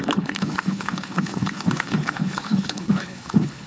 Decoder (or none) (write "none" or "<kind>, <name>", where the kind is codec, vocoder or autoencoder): codec, HILCodec